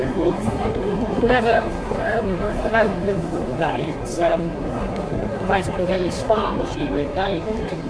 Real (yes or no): no